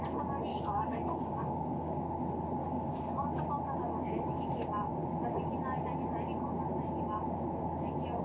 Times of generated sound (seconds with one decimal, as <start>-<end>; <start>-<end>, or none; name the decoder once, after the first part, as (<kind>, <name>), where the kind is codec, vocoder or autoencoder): 0.5-2.0 (codec, DAC); 2.6-3.4